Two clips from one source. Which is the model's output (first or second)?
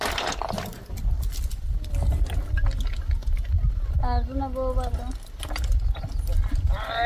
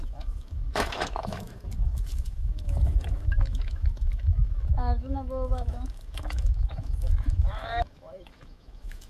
second